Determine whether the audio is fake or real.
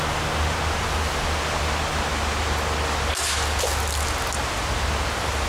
real